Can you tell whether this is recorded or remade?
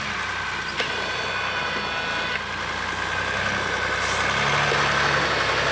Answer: recorded